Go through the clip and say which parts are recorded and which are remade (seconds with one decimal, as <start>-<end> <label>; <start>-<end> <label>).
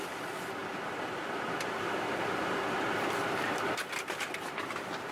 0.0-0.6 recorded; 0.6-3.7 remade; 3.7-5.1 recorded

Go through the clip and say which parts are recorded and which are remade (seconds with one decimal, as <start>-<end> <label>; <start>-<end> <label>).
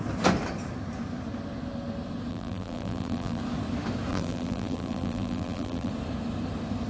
0.0-2.3 recorded; 2.3-3.4 remade; 3.4-4.1 recorded; 4.1-5.9 remade; 5.9-6.9 recorded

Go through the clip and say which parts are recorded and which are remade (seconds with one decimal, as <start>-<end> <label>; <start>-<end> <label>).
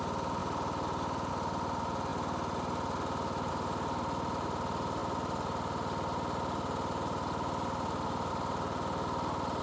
0.0-9.6 recorded